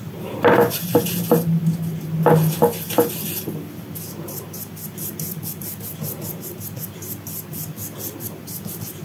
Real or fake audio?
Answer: real